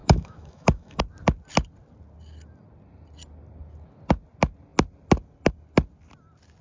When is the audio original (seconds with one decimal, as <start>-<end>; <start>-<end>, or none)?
1.0-6.6